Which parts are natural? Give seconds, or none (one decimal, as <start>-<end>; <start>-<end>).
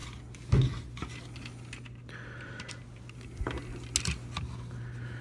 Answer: 0.0-5.2